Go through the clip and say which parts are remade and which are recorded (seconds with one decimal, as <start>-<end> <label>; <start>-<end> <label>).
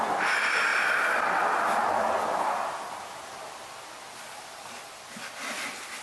0.0-6.0 recorded